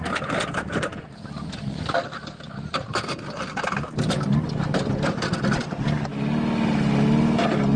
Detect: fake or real real